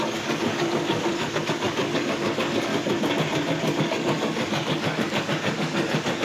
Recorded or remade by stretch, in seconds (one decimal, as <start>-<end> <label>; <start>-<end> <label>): 0.0-2.7 remade; 2.7-3.8 recorded; 3.8-6.2 remade